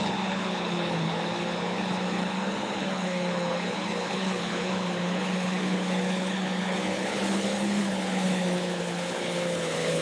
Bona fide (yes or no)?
no